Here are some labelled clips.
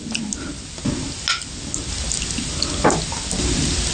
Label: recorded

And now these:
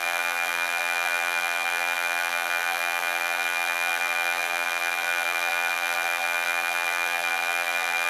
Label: remade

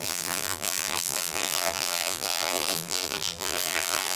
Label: remade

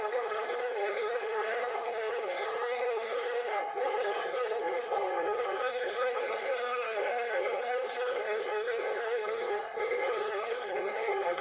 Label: remade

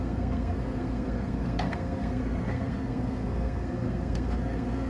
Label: remade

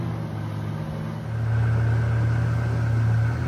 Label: recorded